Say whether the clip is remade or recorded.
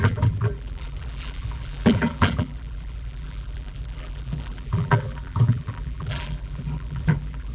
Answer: remade